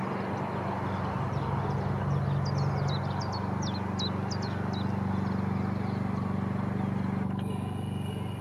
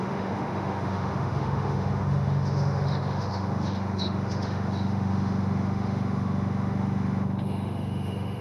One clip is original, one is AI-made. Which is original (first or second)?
first